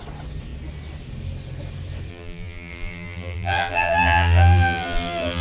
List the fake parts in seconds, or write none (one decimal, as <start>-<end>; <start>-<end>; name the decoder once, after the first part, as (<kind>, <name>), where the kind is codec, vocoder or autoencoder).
2.1-5.4 (vocoder, BigVGAN v2)